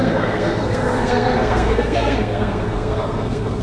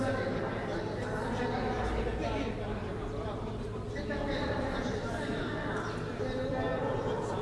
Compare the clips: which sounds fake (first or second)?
first